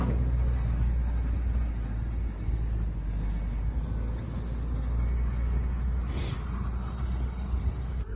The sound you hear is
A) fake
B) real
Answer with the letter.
B